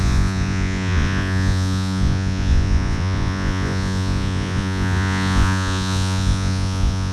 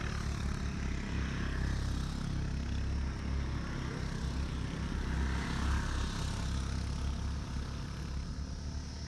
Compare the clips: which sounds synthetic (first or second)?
first